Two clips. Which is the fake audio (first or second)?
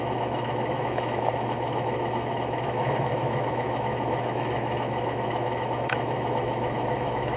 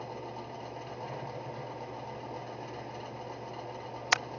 first